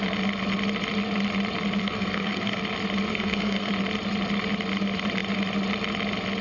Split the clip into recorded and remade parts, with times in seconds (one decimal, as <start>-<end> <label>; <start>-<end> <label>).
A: 0.0-1.8 recorded; 1.8-2.6 remade; 2.6-3.1 recorded; 3.1-3.7 remade; 3.7-6.4 recorded